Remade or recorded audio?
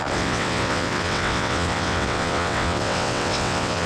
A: remade